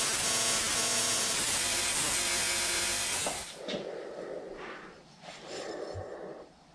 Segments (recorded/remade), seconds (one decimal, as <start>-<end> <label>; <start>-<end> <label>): 0.0-6.7 recorded